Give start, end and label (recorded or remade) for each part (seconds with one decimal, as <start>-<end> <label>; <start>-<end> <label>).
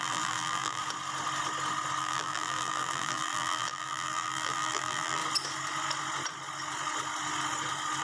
0.0-0.8 remade; 0.8-2.0 recorded; 2.0-5.2 remade; 5.2-8.0 recorded